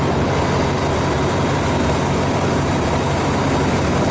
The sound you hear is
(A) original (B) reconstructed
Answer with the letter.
A